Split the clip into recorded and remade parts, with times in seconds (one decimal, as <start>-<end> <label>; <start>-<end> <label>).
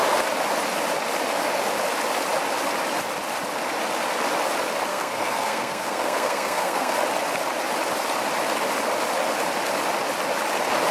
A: 0.0-4.9 recorded; 4.9-6.9 remade; 6.9-10.9 recorded